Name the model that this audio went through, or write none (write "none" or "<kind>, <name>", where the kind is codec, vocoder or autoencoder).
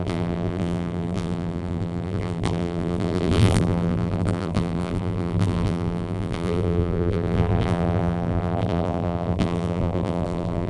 vocoder, BigVGAN v2